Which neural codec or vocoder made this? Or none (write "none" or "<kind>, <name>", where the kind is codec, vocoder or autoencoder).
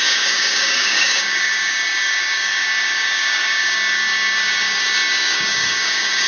codec, DAC